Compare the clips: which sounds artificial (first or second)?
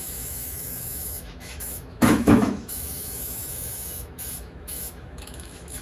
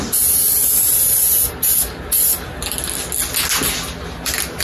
first